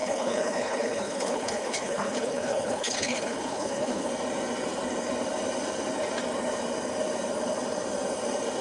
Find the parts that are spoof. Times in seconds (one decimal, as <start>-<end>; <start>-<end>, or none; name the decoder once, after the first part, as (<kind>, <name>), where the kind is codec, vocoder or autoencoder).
0.0-4.1 (codec, HILCodec)